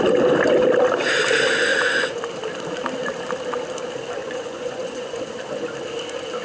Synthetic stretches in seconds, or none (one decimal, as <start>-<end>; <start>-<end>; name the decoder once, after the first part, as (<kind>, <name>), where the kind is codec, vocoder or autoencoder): 1.7-2.2 (vocoder, Vocos); 4.2-5.2